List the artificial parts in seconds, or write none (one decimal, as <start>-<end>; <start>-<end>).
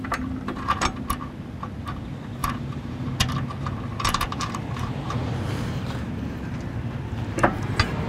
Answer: 2.4-3.1; 3.9-5.3